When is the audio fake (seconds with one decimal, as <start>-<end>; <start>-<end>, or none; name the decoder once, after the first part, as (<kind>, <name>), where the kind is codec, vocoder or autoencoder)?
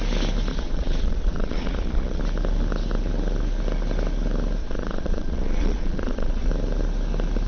0.5-2.2 (vocoder, Vocos); 4.6-6.5